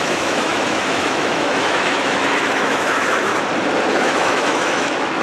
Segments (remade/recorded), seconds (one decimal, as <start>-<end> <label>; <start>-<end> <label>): 0.0-3.3 remade; 3.3-3.9 recorded; 3.9-5.2 remade